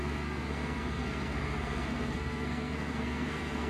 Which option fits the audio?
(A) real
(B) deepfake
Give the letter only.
B